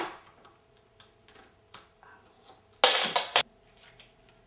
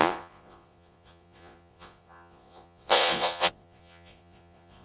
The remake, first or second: second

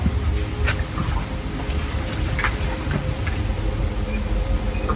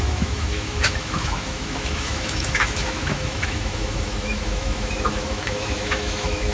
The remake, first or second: second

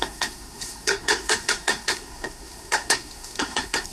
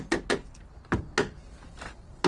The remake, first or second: first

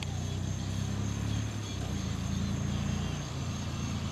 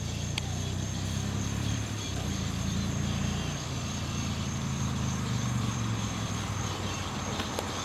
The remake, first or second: second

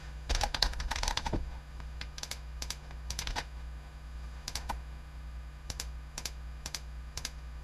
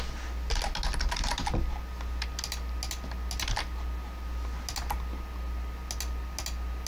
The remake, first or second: first